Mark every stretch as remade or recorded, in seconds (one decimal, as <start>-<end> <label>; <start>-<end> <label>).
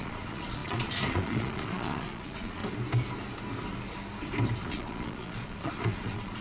0.0-2.6 remade; 2.6-4.6 recorded; 4.6-6.4 remade